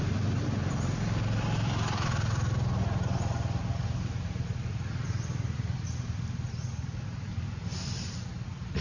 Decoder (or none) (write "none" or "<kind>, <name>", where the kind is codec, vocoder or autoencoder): vocoder, BigVGAN v2